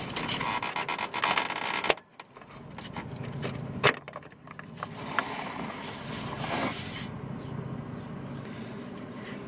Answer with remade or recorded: recorded